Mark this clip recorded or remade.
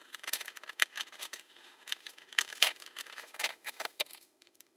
remade